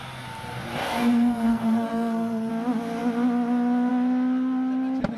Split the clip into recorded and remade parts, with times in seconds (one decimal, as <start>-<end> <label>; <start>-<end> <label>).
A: 0.0-0.8 recorded; 0.8-2.5 remade; 2.5-5.2 recorded